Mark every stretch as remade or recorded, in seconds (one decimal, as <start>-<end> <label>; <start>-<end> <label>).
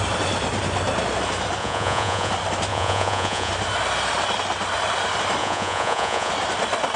0.0-1.6 recorded; 1.6-2.3 remade; 2.3-2.7 recorded; 2.7-3.5 remade; 3.5-5.4 recorded; 5.4-6.3 remade; 6.3-7.0 recorded